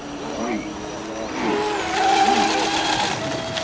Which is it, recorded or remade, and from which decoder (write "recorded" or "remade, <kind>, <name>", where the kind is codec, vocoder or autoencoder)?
recorded